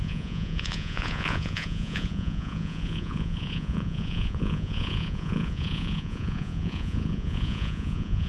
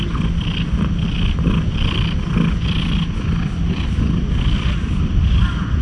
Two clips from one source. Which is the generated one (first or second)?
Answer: first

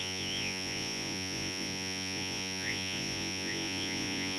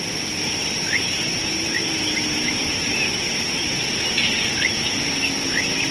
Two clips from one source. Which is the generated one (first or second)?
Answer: first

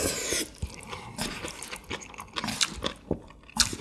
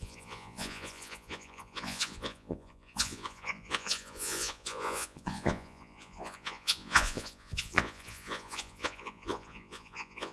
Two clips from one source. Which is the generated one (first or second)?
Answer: second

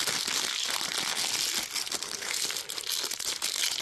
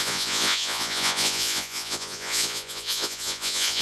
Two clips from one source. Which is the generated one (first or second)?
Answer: second